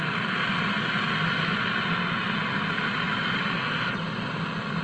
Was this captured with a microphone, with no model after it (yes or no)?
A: yes